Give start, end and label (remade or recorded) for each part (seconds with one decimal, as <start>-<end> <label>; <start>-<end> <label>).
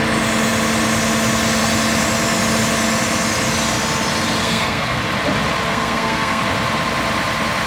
0.0-4.4 recorded; 4.4-5.0 remade; 5.0-5.7 recorded; 5.7-6.4 remade; 6.4-7.7 recorded